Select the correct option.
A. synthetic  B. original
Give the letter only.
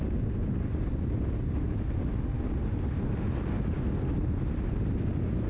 B